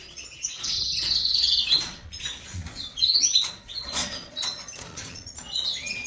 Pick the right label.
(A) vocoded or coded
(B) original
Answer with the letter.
A